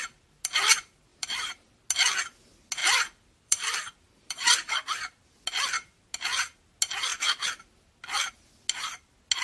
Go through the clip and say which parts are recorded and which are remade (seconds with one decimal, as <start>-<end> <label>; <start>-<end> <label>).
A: 0.0-1.1 recorded; 1.1-1.6 remade; 1.6-2.8 recorded; 2.8-4.7 remade; 4.7-9.4 recorded